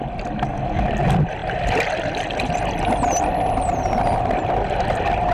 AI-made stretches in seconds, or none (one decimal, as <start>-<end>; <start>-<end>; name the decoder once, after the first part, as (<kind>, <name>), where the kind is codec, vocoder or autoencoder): none